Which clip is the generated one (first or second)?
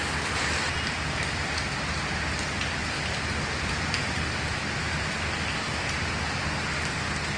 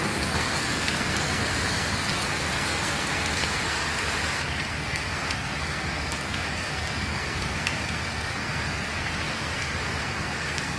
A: second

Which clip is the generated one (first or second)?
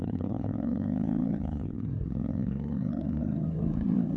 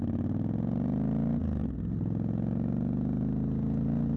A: first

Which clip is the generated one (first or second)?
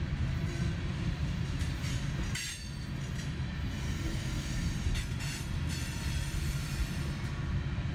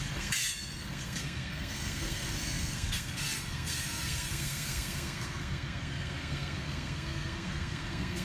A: second